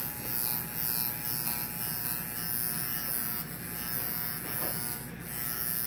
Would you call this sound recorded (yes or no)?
yes